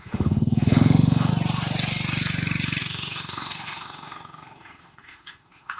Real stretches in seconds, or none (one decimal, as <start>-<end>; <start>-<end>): 1.3-2.8